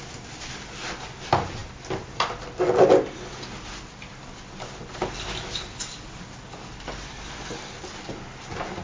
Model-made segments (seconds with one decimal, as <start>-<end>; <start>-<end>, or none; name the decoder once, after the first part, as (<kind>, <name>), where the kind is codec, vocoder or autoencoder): none